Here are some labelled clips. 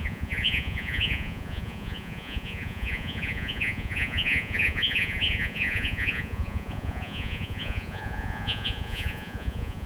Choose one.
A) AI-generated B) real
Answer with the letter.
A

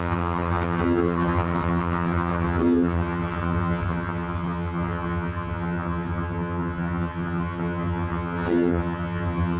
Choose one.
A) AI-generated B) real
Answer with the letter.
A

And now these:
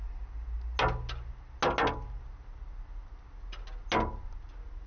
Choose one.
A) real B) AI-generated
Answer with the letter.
A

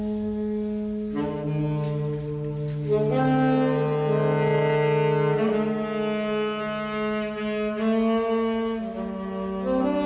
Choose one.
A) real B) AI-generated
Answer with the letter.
A